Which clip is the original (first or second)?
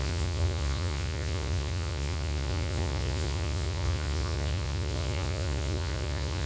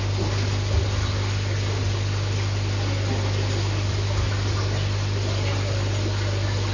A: second